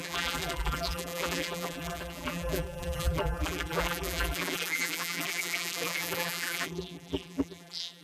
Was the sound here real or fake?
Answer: fake